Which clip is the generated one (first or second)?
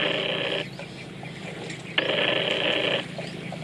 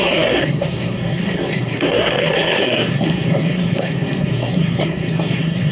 second